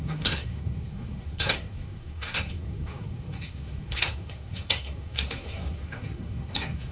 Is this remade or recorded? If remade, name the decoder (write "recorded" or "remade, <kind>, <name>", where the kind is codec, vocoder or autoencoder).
remade, codec, SNAC